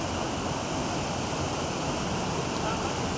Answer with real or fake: real